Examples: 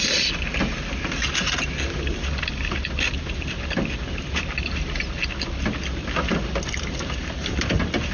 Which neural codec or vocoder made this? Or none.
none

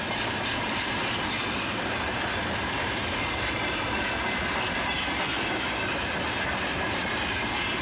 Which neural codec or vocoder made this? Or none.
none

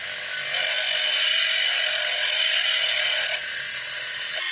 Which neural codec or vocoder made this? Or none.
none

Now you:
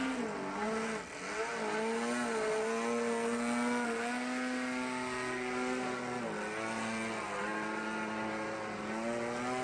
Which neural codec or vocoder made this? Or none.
none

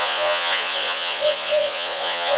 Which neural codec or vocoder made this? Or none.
vocoder, Vocos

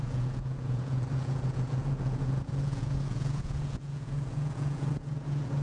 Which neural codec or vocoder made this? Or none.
vocoder, Vocos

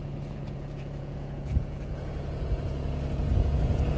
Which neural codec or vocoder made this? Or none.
vocoder, Vocos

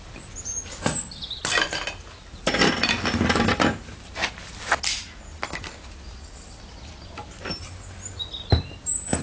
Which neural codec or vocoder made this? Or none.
none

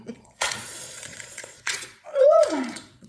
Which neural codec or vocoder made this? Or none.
vocoder, Vocos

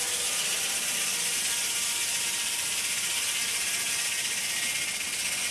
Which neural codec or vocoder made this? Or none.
none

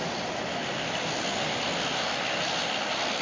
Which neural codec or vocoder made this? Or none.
none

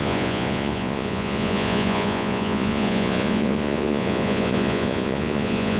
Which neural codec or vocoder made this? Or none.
vocoder, Vocos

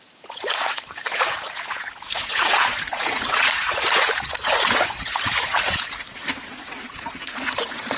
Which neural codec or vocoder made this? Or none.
vocoder, Vocos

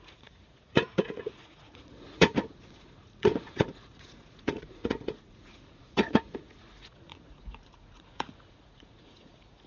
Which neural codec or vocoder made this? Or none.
vocoder, Vocos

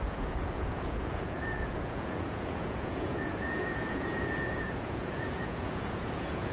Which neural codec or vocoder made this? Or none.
vocoder, Vocos